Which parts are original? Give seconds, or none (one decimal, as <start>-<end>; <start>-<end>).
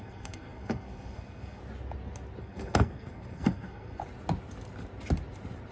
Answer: 1.6-2.4; 4.0-5.7